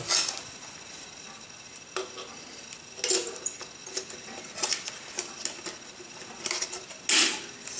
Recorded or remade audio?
recorded